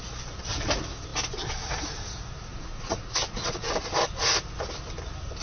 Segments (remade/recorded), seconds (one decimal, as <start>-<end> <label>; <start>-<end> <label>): 0.0-2.5 recorded; 2.5-3.7 remade; 3.7-5.4 recorded